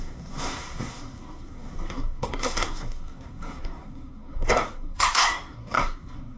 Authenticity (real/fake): fake